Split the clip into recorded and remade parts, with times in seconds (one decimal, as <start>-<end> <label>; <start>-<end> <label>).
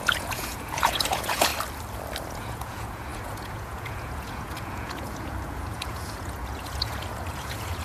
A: 0.0-1.5 remade; 1.5-2.3 recorded; 2.3-7.8 remade